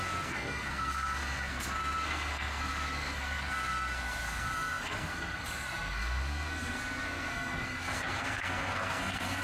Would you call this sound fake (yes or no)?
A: yes